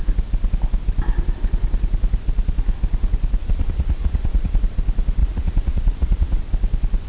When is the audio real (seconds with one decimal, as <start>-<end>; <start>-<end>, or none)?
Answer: 0.0-3.4; 4.6-5.2; 6.4-7.1